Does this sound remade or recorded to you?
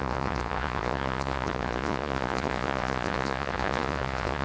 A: remade